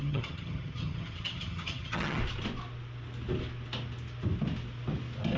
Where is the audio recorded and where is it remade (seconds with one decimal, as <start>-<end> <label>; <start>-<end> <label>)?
0.0-2.2 remade; 2.2-5.4 recorded